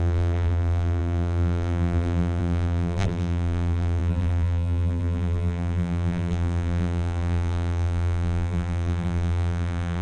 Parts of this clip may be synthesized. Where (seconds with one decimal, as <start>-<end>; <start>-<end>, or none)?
0.0-10.0